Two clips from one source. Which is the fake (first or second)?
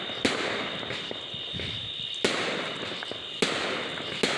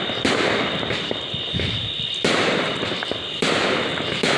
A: second